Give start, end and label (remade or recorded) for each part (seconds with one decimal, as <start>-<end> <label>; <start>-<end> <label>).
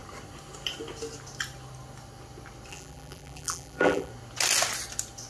0.0-2.7 recorded; 2.7-4.1 remade; 4.1-5.3 recorded